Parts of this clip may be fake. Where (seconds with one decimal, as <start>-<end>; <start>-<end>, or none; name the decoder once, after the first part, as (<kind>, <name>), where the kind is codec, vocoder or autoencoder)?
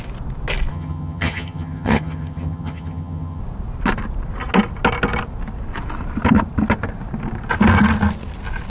0.7-3.4 (vocoder, HiFi-GAN)